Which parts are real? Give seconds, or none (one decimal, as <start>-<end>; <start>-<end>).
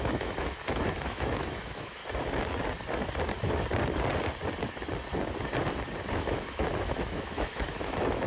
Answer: 2.0-6.1